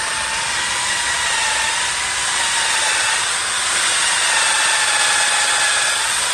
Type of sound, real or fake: real